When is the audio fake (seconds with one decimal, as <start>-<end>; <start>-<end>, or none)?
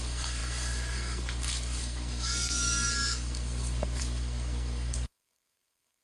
0.0-6.0